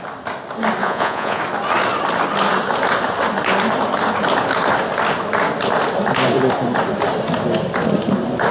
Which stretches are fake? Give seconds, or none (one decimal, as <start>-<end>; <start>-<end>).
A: 0.8-1.4